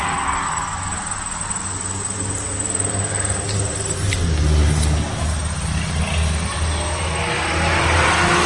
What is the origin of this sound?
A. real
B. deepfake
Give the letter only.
A